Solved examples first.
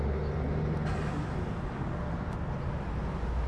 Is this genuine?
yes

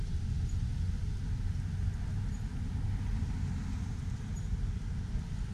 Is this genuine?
yes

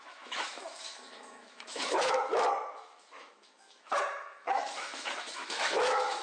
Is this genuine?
no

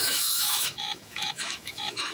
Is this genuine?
no